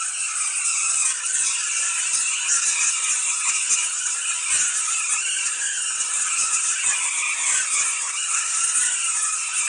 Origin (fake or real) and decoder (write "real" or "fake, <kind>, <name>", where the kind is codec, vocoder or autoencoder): real